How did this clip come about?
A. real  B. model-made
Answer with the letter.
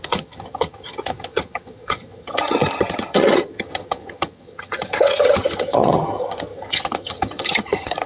B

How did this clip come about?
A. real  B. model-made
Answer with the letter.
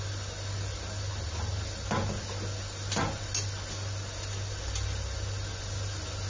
A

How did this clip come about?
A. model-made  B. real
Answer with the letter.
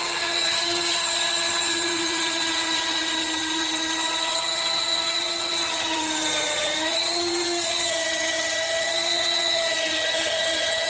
A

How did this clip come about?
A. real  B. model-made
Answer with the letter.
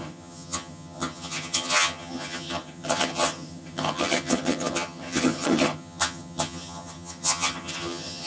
B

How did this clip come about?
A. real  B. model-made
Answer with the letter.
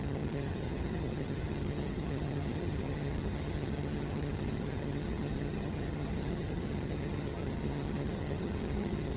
B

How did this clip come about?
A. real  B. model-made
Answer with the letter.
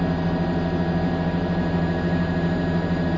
A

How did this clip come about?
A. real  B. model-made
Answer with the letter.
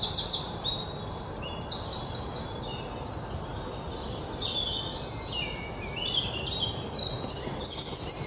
A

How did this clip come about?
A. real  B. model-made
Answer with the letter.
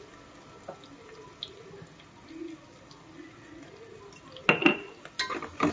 A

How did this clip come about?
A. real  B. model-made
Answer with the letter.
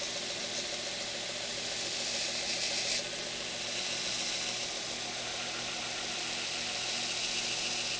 A